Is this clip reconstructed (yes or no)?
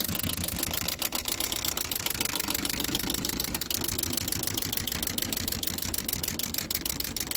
yes